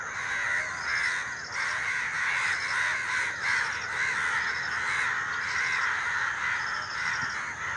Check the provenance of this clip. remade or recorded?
recorded